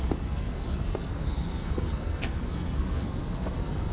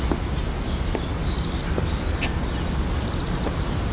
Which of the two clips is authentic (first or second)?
second